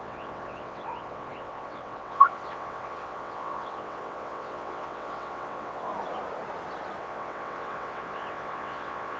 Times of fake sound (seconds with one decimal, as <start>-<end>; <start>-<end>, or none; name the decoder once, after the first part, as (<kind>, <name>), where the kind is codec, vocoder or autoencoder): 0.0-5.9 (vocoder, WaveNeXt); 7.0-9.2